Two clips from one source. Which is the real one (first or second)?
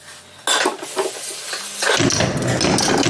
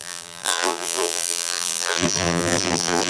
first